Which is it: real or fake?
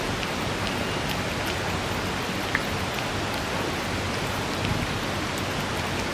real